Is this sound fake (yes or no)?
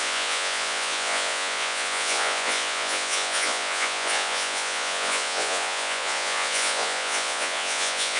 yes